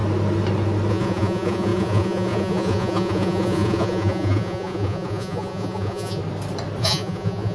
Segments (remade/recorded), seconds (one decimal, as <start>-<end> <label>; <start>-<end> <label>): 0.0-0.9 recorded; 0.9-6.2 remade; 6.2-6.8 recorded; 6.8-7.5 remade

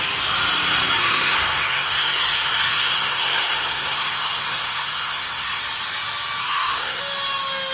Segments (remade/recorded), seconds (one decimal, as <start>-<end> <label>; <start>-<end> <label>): 0.0-1.0 recorded; 1.0-5.6 remade; 5.6-6.4 recorded; 6.4-7.0 remade; 7.0-7.7 recorded

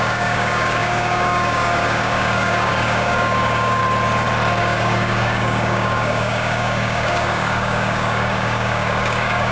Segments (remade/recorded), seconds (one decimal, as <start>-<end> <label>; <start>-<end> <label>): 0.0-3.8 remade; 3.8-4.6 recorded; 4.6-9.5 remade